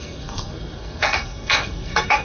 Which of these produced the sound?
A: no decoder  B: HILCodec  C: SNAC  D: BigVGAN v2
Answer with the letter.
C